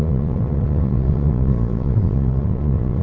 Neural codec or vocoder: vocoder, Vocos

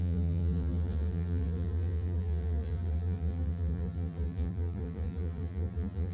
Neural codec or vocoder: vocoder, BigVGAN v2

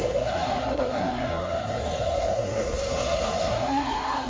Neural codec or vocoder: codec, SNAC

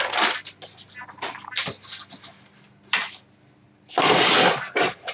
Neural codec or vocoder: none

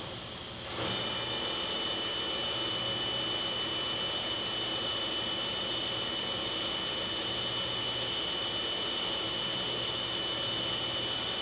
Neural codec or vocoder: none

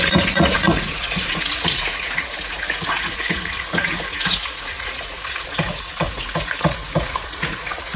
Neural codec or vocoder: vocoder, Vocos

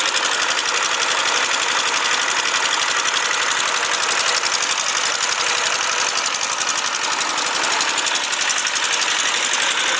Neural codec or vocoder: none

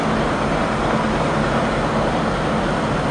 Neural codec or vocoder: none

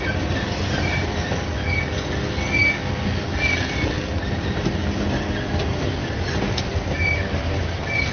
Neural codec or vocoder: none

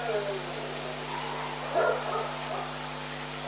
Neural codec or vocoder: none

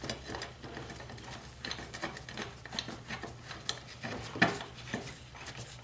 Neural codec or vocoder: none